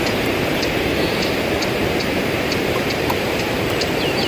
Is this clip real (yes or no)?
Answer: no